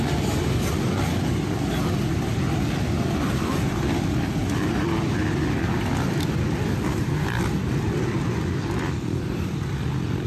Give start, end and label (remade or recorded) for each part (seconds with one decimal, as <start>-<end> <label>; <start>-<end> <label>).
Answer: 0.0-4.4 remade; 4.4-5.7 recorded; 5.7-10.3 remade